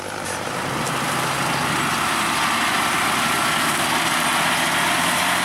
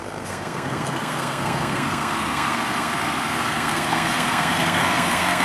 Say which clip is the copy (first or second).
second